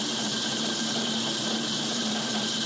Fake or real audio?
fake